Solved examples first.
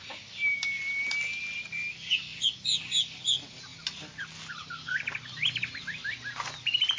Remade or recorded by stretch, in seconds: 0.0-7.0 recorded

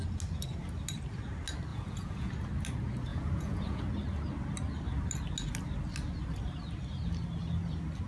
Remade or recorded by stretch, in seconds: 0.0-1.7 recorded; 1.7-2.3 remade; 2.3-3.1 recorded; 3.1-3.8 remade; 3.8-8.1 recorded

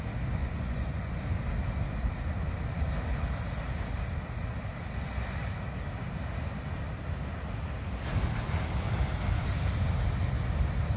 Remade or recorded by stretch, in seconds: 0.0-0.4 recorded; 0.4-1.2 remade; 1.2-11.0 recorded

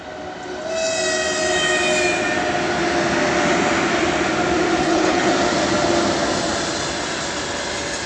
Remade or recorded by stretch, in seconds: 0.0-4.8 recorded; 4.8-5.3 remade; 5.3-8.1 recorded

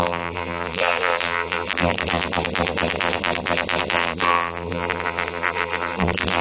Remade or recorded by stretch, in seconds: 0.0-6.4 remade